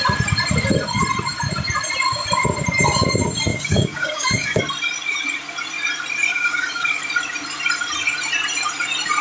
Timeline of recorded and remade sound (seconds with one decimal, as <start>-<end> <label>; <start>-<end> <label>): 0.0-3.5 recorded; 3.5-4.6 remade; 4.6-6.3 recorded; 6.3-7.0 remade; 7.0-9.2 recorded